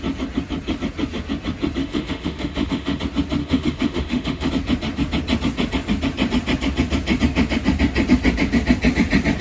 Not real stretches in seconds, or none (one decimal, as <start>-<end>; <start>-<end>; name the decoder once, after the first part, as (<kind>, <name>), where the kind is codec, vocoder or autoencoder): 1.8-3.0 (autoencoder, DAC-VAE); 3.4-4.5